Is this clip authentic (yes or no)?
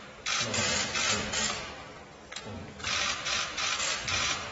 no